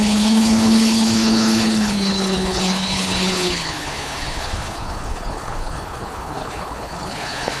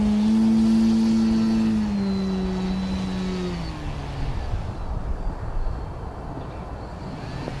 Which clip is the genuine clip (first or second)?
second